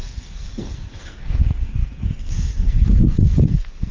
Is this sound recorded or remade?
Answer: remade